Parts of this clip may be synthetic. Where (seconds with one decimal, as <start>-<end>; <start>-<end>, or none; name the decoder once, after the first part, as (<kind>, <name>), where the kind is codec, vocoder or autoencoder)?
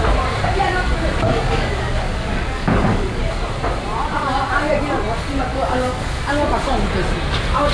1.3-3.5 (codec, DAC); 5.5-6.2